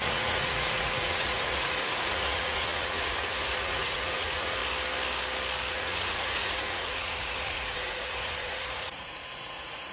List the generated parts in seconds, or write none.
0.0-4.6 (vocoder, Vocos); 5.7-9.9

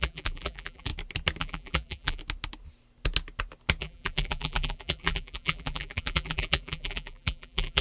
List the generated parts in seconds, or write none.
0.0-0.9 (vocoder, BigVGAN v2); 1.4-2.2; 3.8-7.8

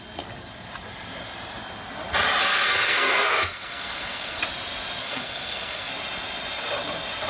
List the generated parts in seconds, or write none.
2.4-4.4 (codec, SNAC); 5.0-5.9

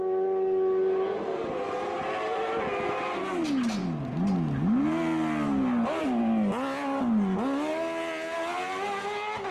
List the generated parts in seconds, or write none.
none

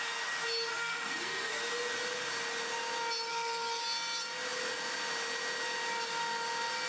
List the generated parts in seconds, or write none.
0.7-1.6 (codec, SNAC); 3.3-3.8

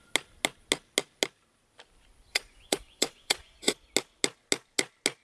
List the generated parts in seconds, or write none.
2.3-3.7 (vocoder, Vocos)

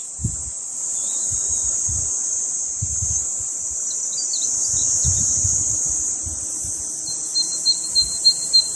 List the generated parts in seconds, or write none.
none